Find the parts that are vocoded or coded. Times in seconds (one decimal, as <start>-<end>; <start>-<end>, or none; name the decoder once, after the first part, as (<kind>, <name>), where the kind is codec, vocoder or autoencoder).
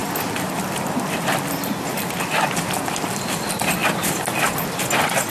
0.0-2.1 (vocoder, BigVGAN v2); 3.8-4.8